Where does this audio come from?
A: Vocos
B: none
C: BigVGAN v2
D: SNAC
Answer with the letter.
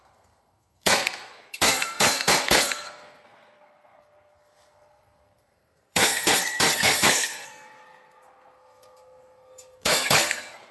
D